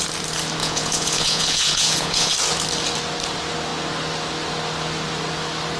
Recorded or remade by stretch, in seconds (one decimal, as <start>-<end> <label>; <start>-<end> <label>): 0.0-0.6 recorded; 0.6-2.3 remade; 2.3-5.8 recorded